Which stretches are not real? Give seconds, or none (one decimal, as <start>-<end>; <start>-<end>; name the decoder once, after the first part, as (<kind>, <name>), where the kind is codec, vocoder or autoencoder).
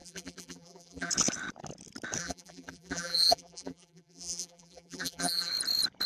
0.0-1.1 (vocoder, BigVGAN v2); 2.2-5.5